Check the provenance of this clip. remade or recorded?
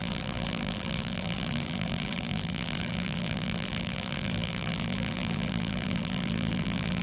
remade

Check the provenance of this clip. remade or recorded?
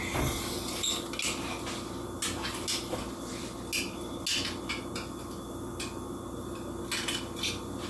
recorded